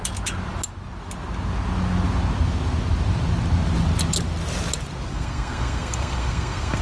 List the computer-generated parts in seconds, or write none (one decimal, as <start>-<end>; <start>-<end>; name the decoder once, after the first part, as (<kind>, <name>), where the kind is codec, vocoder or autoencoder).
5.1-6.8 (codec, SNAC)